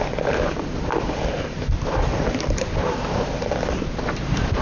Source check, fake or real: real